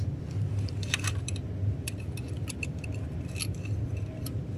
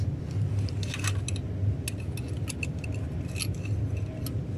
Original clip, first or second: second